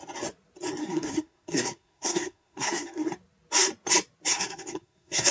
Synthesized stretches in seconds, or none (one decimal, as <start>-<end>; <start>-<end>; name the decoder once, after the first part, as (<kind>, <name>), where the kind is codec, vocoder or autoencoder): 0.8-3.1 (codec, SNAC); 4.3-5.3